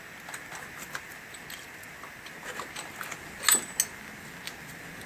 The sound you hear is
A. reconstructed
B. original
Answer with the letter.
B